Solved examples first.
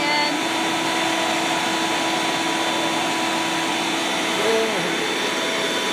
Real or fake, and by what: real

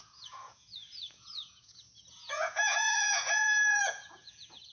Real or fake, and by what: fake, vocoder, Vocos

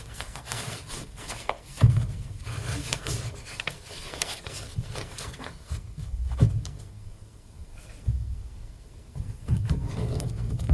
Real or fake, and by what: fake, codec, SNAC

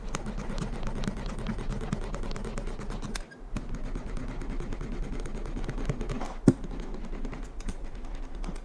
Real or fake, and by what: real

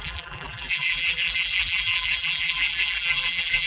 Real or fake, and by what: fake, vocoder, BigVGAN v2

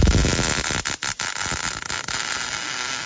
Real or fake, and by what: real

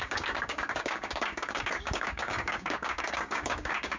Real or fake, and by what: fake, codec, DAC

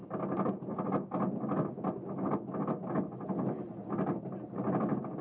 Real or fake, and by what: real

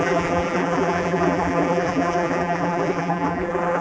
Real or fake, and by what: fake, vocoder, BigVGAN v2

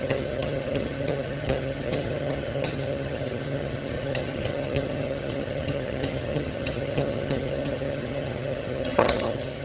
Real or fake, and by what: fake, vocoder, HiFi-GAN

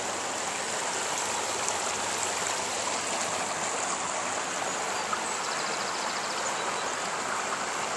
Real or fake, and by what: real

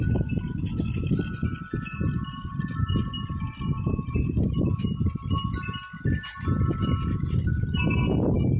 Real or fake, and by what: real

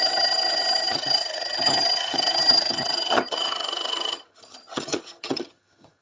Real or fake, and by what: fake, vocoder, HiFi-GAN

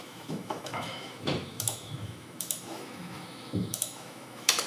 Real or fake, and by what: fake, autoencoder, DAC-VAE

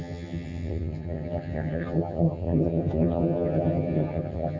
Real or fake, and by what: fake, vocoder, HiFi-GAN